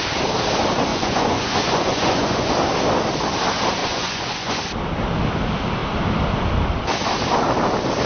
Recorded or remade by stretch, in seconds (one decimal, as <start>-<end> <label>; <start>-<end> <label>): 0.0-0.9 recorded; 0.9-2.5 remade; 2.5-3.8 recorded; 3.8-4.6 remade; 4.6-8.1 recorded